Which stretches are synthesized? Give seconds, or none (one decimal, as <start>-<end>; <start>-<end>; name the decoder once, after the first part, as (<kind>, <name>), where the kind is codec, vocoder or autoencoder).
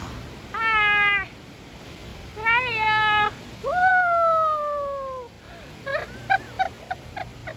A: none